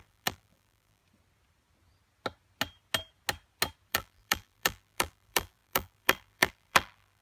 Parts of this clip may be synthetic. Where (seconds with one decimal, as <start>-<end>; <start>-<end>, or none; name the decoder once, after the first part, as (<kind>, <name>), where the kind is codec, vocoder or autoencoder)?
0.0-1.0 (vocoder, BigVGAN v2); 3.9-7.2